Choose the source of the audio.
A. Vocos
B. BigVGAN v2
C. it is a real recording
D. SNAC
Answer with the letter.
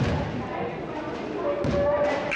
C